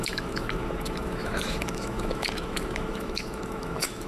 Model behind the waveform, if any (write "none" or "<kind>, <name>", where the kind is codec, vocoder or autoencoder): autoencoder, DAC-VAE